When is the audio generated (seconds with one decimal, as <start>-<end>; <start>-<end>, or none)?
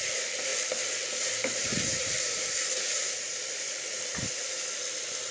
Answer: 0.0-5.3